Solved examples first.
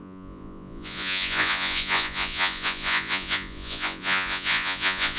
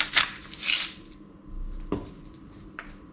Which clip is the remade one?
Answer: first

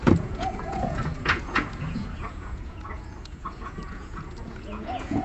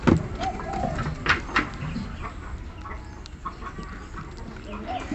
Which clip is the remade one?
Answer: first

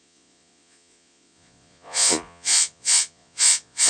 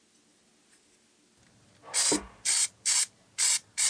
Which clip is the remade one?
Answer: first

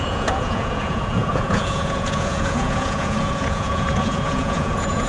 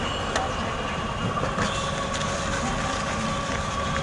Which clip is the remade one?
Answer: first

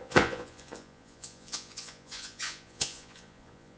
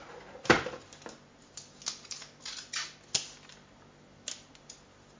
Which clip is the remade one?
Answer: first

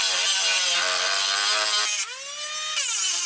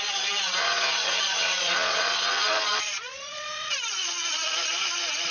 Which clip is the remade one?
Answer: second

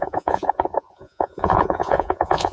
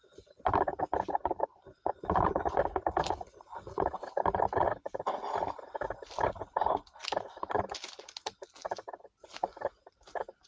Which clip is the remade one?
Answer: first